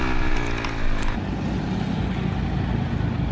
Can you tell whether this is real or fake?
real